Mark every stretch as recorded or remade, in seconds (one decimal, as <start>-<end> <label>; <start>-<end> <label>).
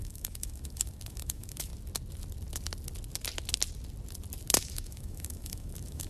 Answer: 0.0-1.7 remade; 1.7-4.6 recorded; 4.6-6.1 remade